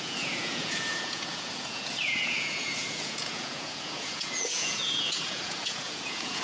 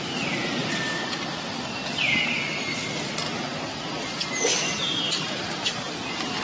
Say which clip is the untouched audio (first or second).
second